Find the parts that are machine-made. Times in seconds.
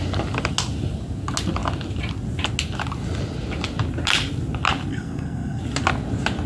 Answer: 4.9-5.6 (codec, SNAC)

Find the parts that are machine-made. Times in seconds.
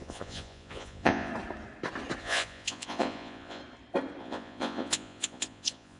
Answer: 0.0-1.3 (vocoder, Vocos); 2.2-3.6; 4.2-6.0